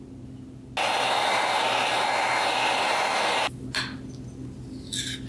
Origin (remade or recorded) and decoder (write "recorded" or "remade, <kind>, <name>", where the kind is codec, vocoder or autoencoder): recorded